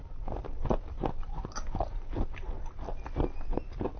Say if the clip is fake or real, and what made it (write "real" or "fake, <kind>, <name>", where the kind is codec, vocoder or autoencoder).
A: real